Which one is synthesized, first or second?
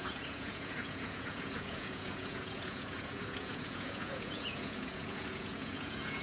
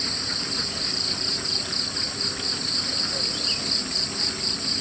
first